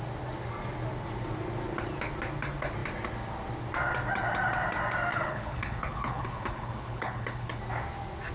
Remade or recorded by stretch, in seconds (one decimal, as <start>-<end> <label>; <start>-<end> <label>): 0.0-5.1 recorded; 5.1-7.6 remade; 7.6-8.3 recorded